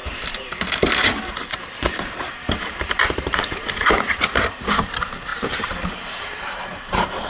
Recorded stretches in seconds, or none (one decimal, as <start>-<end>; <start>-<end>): 0.0-2.3